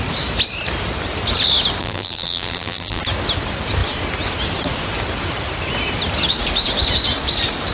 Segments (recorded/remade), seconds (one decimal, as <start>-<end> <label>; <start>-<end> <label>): 0.0-1.8 recorded; 1.8-3.0 remade; 3.0-7.7 recorded